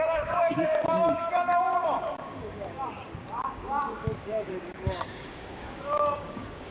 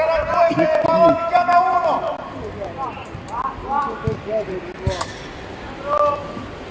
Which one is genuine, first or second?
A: second